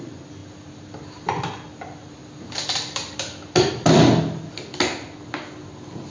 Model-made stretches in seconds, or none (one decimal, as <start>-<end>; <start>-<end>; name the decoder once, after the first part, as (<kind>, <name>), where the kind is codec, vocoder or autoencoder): none